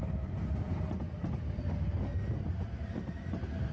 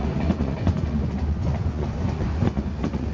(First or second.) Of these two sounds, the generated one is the second